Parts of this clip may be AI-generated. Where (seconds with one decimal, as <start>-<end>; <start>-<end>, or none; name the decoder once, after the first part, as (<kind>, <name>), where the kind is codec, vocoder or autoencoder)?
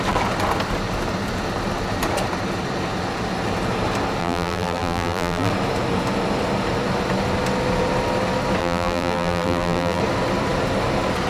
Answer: 4.2-5.5 (vocoder, BigVGAN v2); 8.6-10.0